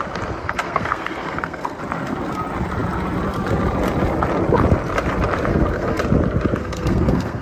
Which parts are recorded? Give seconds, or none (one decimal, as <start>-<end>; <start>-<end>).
0.0-0.4; 1.8-5.5; 6.0-6.6